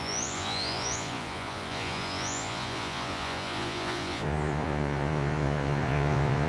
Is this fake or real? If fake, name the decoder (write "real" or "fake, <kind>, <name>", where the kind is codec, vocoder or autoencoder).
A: fake, vocoder, Vocos